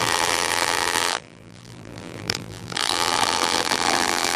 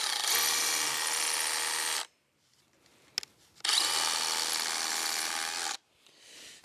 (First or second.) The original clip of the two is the second